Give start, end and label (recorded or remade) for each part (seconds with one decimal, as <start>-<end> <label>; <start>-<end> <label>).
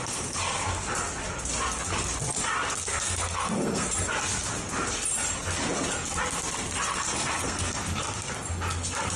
0.0-2.9 recorded; 2.9-3.9 remade; 3.9-6.9 recorded; 6.9-8.0 remade; 8.0-9.2 recorded